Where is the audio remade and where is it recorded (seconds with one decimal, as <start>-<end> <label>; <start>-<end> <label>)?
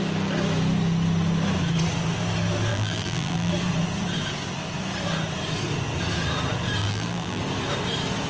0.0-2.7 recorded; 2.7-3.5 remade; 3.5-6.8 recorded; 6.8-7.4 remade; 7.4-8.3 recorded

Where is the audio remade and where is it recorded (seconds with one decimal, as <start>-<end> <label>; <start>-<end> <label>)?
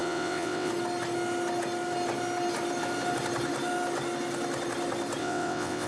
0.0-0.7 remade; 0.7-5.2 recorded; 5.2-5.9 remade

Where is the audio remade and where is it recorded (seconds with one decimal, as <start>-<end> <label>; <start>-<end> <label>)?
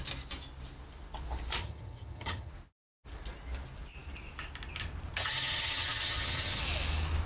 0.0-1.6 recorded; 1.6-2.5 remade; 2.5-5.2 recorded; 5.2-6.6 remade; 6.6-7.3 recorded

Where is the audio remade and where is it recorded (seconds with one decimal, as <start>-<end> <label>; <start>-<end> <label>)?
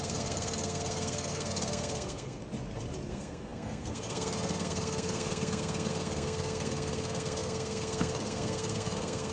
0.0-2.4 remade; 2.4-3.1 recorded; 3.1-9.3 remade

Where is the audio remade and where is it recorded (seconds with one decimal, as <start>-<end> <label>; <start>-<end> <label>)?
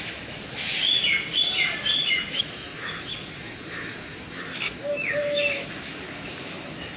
0.0-0.7 remade; 0.7-2.1 recorded; 2.1-7.0 remade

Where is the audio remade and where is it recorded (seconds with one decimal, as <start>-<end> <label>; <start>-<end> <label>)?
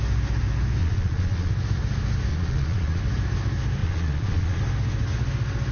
0.0-0.8 recorded; 0.8-1.5 remade; 1.5-2.3 recorded; 2.3-3.0 remade; 3.0-3.8 recorded; 3.8-4.6 remade; 4.6-5.7 recorded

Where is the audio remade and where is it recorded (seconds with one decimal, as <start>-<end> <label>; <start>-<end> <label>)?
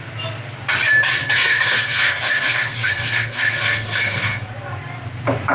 0.0-1.2 recorded; 1.2-4.5 remade; 4.5-5.5 recorded